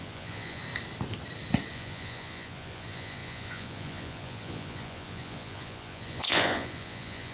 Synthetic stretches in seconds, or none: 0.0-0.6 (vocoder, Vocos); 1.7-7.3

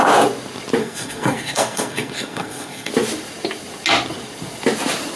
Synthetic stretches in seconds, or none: 0.8-2.9 (codec, SNAC)

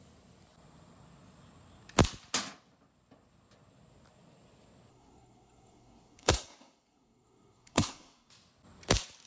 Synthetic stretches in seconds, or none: 4.9-8.3 (codec, SNAC)

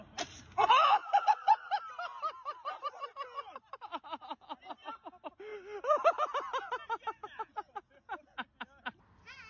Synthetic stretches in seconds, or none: 1.0-1.7 (vocoder, Vocos)

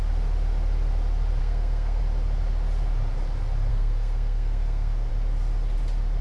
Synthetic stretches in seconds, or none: 1.4-2.0 (codec, SNAC); 3.7-5.1

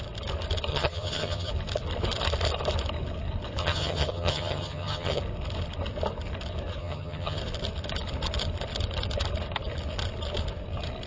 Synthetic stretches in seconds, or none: 0.7-1.5 (vocoder, HiFi-GAN); 3.6-5.2; 6.8-7.4